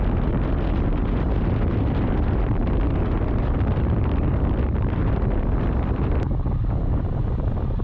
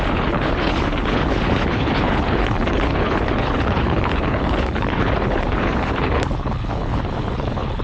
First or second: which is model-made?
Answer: second